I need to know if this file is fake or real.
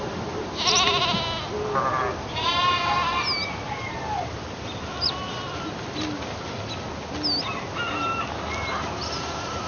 real